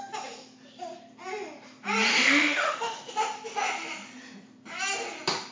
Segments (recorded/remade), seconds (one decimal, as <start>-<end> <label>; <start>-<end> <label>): 0.0-2.1 recorded; 2.1-3.1 remade; 3.1-5.5 recorded